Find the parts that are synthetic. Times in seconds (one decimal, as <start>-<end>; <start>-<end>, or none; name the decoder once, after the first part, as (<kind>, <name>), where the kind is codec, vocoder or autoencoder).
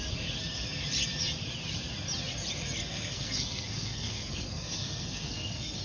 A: 2.9-5.8 (codec, SNAC)